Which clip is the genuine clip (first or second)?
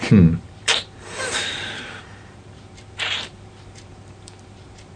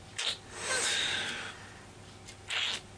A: second